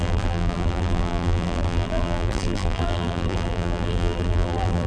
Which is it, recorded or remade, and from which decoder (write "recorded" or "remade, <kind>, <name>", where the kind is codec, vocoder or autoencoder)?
remade, vocoder, BigVGAN v2